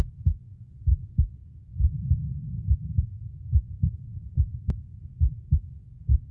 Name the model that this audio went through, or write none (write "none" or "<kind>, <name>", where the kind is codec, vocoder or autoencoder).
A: codec, SNAC